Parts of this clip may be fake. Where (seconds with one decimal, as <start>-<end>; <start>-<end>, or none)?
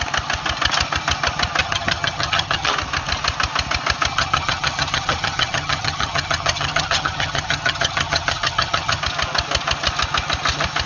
1.6-2.7; 4.1-9.0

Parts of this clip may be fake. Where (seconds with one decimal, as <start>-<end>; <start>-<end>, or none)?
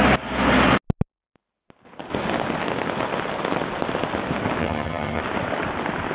4.6-5.2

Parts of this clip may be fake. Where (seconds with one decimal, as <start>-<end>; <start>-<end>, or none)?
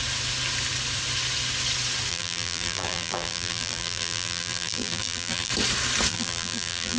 2.1-5.5; 6.1-7.0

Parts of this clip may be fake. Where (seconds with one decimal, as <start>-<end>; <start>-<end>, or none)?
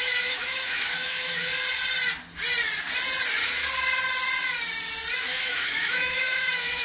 0.0-1.5; 5.2-6.8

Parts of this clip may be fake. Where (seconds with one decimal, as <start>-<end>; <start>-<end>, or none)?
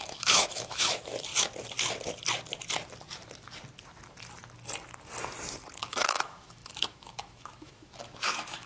0.0-1.3; 5.8-8.7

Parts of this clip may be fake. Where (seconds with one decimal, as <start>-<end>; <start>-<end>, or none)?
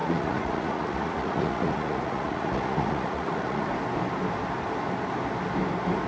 0.0-3.7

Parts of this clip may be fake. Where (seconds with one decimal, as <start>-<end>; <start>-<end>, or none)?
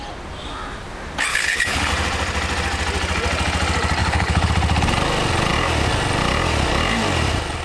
1.3-1.9; 4.0-4.5